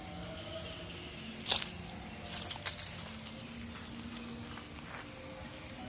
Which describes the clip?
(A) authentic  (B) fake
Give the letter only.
A